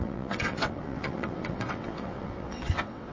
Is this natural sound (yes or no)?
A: no